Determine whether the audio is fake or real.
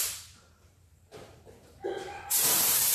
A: fake